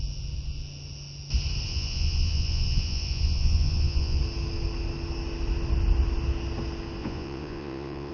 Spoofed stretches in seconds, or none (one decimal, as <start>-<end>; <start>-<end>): 1.7-4.2; 7.0-8.1